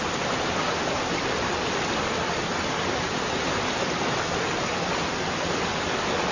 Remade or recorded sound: recorded